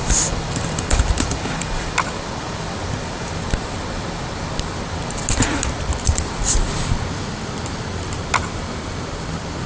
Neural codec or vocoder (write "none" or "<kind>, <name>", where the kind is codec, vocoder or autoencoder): vocoder, BigVGAN v2